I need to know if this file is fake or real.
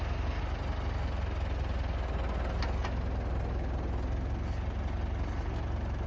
real